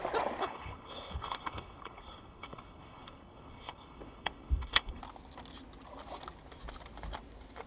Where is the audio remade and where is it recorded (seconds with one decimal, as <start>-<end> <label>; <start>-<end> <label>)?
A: 0.0-0.4 recorded; 0.4-5.0 remade; 5.0-7.7 recorded